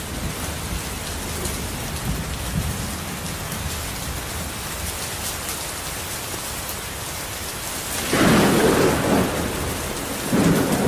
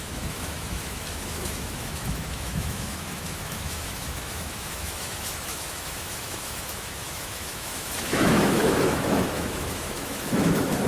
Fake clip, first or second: second